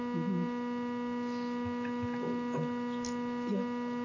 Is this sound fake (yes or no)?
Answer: no